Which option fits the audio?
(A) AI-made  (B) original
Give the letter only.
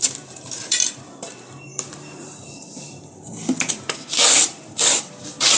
A